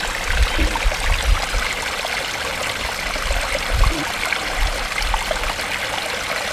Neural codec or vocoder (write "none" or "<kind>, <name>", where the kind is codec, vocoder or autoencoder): none